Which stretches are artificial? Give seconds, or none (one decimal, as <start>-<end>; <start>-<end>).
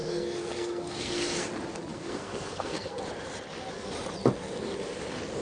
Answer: 0.0-1.5; 1.9-3.0